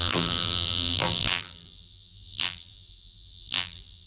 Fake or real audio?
fake